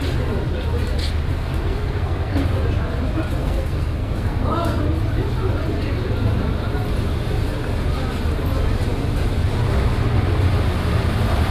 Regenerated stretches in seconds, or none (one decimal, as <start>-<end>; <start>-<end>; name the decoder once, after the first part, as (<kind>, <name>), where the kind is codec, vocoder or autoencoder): 1.3-2.5 (codec, SNAC); 3.4-4.8